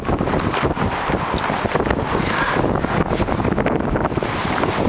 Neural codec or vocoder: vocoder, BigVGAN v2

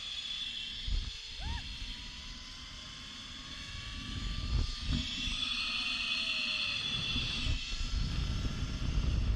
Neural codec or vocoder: none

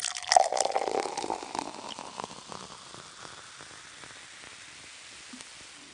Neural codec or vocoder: none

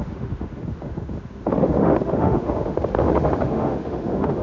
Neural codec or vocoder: autoencoder, DAC-VAE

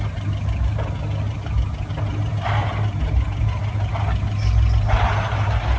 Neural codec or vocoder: none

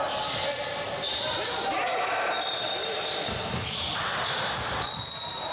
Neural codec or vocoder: none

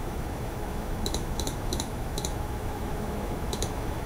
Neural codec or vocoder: autoencoder, DAC-VAE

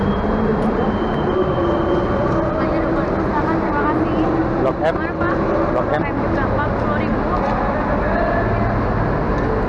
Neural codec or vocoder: none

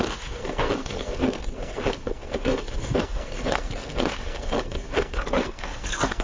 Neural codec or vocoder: codec, SNAC